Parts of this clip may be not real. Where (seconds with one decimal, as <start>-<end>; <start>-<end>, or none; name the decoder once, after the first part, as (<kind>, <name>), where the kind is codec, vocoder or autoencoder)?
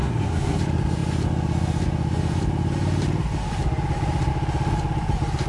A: 0.0-0.6 (codec, SNAC)